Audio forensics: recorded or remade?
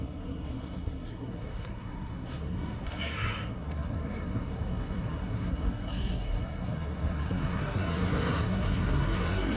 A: remade